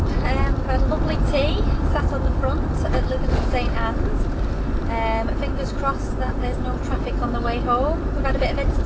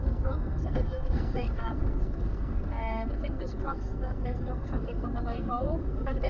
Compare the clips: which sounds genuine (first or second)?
first